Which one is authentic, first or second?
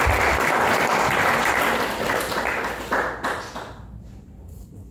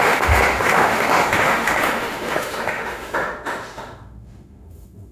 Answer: first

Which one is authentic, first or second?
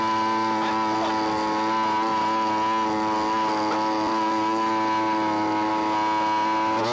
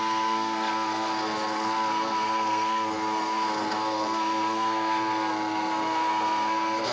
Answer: first